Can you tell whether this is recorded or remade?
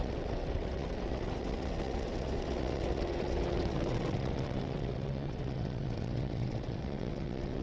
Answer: remade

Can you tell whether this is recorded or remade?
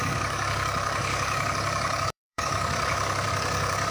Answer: remade